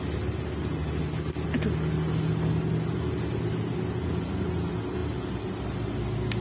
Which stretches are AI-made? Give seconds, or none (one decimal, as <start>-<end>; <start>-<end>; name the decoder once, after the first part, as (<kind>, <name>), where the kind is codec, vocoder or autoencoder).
none